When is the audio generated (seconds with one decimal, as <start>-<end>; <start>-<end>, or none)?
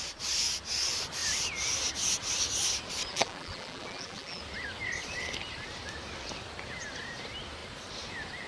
3.1-4.4